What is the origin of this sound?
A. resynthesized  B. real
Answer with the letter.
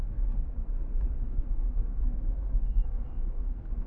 A